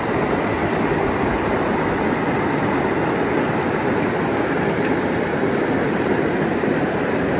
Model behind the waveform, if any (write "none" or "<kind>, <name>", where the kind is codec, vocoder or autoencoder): none